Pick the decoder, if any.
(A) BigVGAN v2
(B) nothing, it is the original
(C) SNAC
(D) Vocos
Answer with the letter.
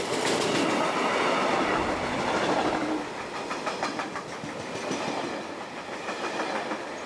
B